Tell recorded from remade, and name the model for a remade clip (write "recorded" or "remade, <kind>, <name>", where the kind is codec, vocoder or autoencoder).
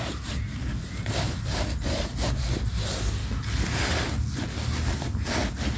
recorded